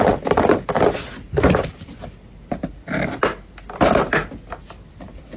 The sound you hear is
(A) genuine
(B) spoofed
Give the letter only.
A